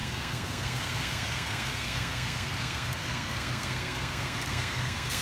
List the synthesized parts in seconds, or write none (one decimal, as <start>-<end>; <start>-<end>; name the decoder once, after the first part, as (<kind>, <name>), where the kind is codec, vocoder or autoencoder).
0.0-5.2 (codec, SNAC)